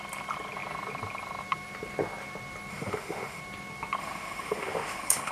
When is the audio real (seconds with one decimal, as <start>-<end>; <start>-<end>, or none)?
0.0-2.7; 3.4-4.0